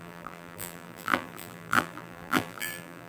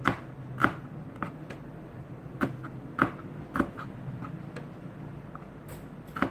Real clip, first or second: second